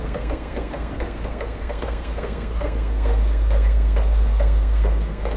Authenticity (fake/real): fake